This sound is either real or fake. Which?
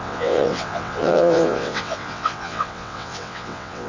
fake